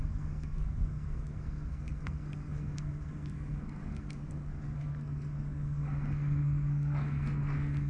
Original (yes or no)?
no